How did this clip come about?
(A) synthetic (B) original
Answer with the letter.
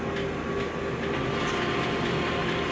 B